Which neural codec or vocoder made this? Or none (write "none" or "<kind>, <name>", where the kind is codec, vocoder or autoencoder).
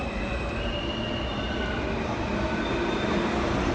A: none